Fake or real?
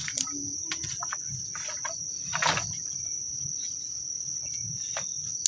real